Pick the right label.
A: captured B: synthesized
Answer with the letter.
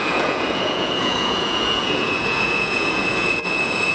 B